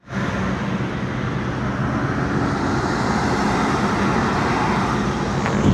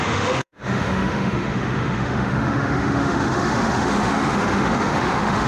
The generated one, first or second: second